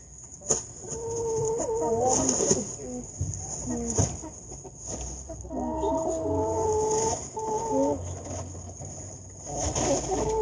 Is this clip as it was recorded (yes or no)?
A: yes